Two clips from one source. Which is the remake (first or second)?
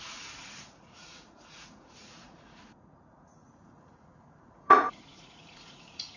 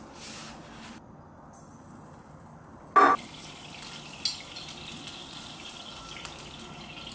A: first